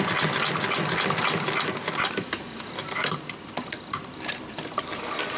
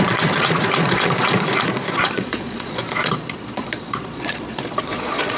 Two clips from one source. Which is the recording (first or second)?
first